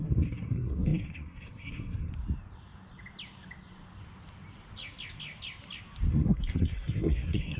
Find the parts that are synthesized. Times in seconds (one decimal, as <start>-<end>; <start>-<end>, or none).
0.0-2.1; 6.1-7.6